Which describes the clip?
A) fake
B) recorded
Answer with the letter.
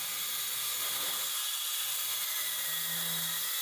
B